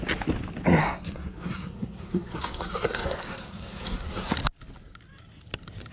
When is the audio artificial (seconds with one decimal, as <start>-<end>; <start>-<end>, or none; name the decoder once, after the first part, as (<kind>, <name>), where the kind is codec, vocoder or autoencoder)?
0.8-4.3 (codec, SNAC)